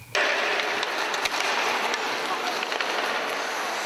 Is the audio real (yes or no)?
yes